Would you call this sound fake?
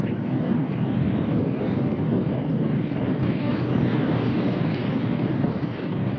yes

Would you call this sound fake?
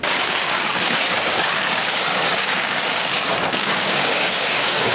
yes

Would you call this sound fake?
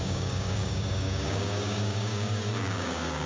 yes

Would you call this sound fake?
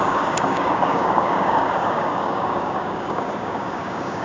yes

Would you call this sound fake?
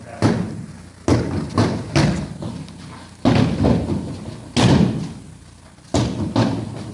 no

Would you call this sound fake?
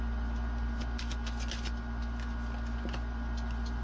no